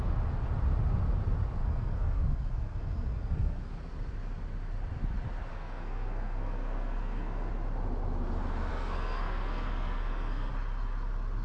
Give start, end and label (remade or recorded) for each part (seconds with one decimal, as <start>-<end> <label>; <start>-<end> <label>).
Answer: 0.0-1.6 recorded; 1.6-3.7 remade; 3.7-5.5 recorded; 5.5-7.5 remade; 7.5-8.7 recorded; 8.7-10.5 remade; 10.5-11.4 recorded